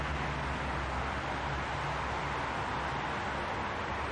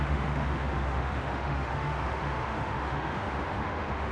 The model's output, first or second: second